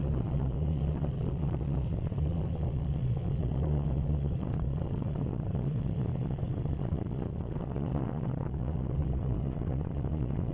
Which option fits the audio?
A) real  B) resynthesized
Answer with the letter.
B